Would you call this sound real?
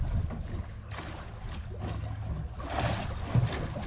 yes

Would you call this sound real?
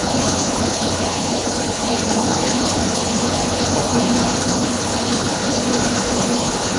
no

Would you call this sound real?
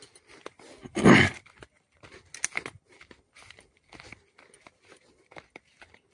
yes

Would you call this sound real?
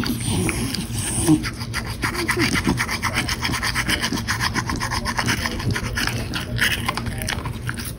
yes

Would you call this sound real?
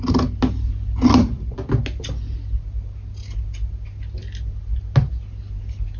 yes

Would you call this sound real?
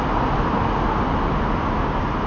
yes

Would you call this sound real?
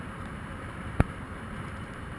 no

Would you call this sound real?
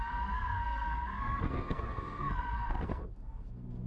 no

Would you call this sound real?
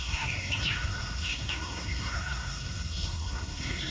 no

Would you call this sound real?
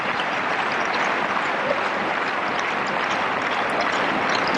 yes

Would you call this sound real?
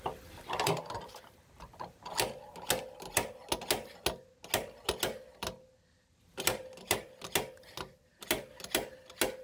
yes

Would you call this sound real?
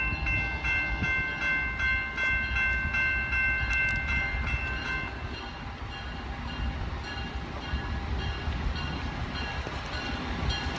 yes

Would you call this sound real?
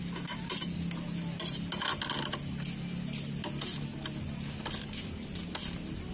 yes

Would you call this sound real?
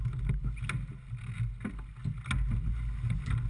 yes